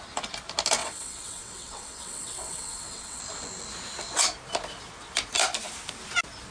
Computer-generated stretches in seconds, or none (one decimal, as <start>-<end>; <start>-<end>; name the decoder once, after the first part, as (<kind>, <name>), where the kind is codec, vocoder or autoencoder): 0.8-3.2 (vocoder, WaveNeXt)